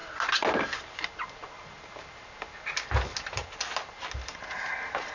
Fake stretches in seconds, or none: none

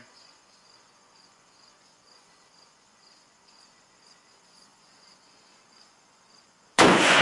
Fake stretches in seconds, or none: 0.0-7.2 (vocoder, Vocos)

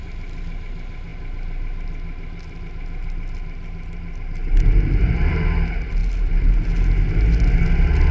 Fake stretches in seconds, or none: none

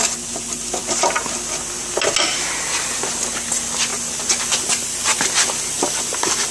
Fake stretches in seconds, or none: none

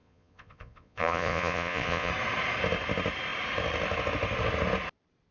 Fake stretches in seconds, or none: 0.0-2.1 (vocoder, Vocos)

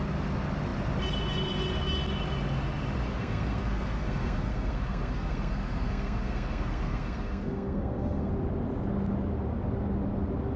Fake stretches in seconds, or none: 3.1-8.3 (codec, SNAC)